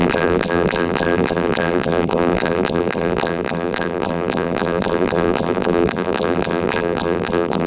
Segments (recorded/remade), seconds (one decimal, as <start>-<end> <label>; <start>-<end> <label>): 0.0-7.7 remade